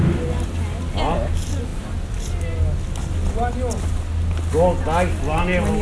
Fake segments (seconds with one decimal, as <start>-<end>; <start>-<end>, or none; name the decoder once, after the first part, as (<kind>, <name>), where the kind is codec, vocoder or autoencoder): none